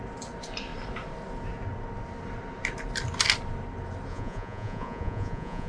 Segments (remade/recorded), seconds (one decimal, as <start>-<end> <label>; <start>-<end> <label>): 0.0-4.1 recorded; 4.1-5.7 remade